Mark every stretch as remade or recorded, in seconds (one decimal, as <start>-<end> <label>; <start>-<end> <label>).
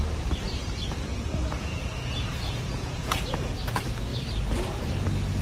0.0-1.1 recorded; 1.1-3.6 remade; 3.6-5.4 recorded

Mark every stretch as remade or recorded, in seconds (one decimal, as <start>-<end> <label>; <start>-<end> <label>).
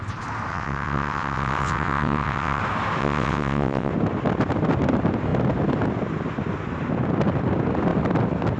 0.0-0.5 recorded; 0.5-2.6 remade; 2.6-3.0 recorded; 3.0-3.9 remade; 3.9-8.6 recorded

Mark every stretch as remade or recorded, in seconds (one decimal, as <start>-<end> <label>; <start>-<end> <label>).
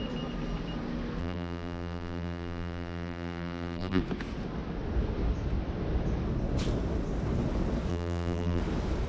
0.0-1.2 recorded; 1.2-4.0 remade; 4.0-7.9 recorded; 7.9-8.6 remade; 8.6-9.1 recorded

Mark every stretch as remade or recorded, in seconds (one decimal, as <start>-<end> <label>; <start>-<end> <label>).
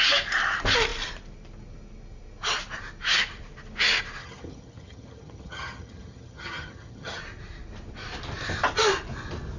0.0-4.2 recorded; 4.2-7.2 remade; 7.2-9.6 recorded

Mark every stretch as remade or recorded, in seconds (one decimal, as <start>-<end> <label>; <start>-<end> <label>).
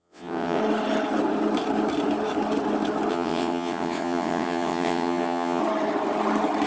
0.0-0.6 remade; 0.6-3.1 recorded; 3.1-5.6 remade; 5.6-6.7 recorded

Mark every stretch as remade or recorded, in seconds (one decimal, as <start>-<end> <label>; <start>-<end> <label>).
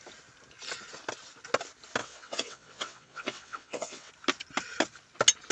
0.0-2.0 recorded; 2.0-4.1 remade; 4.1-5.5 recorded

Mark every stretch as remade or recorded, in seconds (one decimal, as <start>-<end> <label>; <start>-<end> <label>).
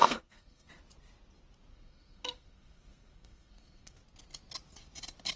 0.0-0.7 remade; 0.7-1.7 recorded; 1.7-4.0 remade; 4.0-5.4 recorded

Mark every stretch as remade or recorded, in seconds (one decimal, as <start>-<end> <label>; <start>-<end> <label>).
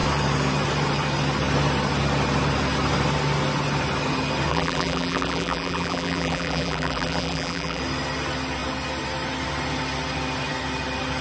0.0-4.5 recorded; 4.5-7.8 remade; 7.8-11.2 recorded